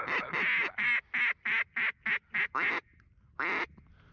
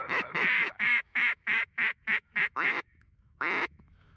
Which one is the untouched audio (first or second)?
first